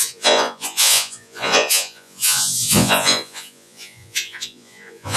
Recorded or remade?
remade